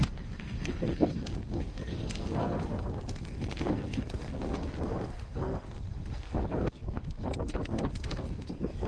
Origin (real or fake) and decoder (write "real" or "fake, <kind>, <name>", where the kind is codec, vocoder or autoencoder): fake, codec, SNAC